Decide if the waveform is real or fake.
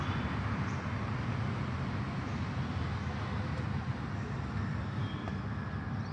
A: real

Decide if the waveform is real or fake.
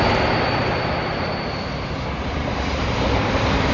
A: real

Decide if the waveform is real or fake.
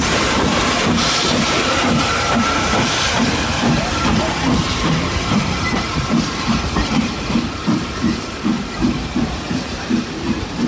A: fake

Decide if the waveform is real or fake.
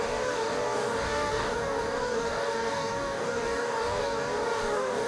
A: fake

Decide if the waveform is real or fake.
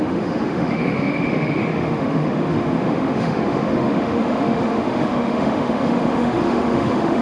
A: fake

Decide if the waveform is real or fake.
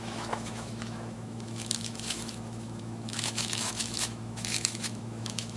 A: fake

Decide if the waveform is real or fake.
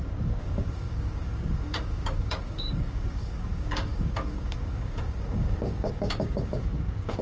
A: fake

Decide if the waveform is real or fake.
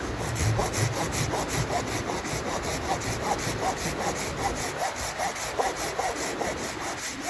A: real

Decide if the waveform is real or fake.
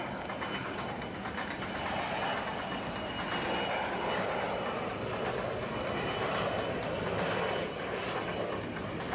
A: real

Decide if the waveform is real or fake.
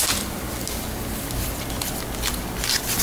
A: real